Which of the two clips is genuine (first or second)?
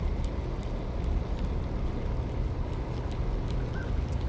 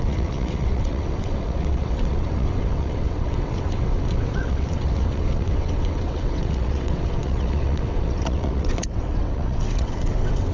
first